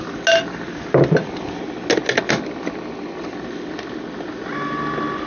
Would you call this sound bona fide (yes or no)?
yes